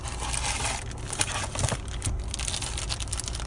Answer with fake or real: real